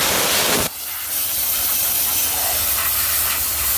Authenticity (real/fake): real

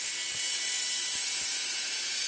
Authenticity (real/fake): real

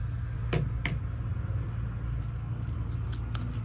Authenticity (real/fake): real